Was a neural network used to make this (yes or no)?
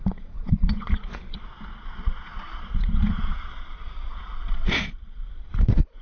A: yes